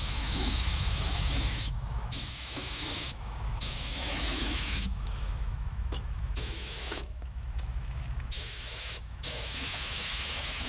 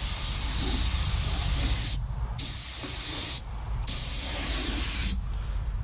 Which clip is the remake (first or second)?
first